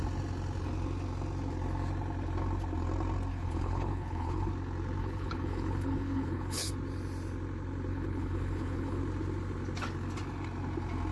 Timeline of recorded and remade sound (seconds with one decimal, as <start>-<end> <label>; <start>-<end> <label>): 0.0-3.3 recorded; 3.3-4.5 remade; 4.5-5.0 recorded; 5.0-6.7 remade; 6.7-7.9 recorded; 7.9-9.0 remade; 9.0-11.1 recorded

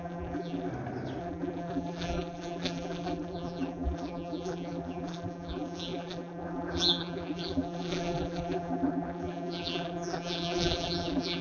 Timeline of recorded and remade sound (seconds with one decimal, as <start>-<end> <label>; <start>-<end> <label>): 0.0-0.7 remade; 0.7-1.2 recorded; 1.2-11.4 remade